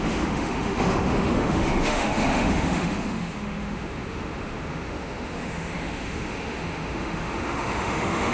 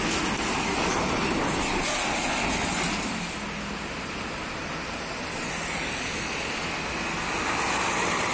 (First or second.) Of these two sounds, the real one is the second